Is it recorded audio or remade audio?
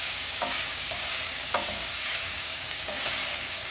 remade